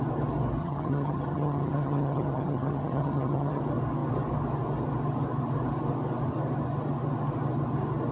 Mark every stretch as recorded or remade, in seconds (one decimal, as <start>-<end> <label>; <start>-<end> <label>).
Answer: 0.0-0.6 recorded; 0.6-3.6 remade; 3.6-8.1 recorded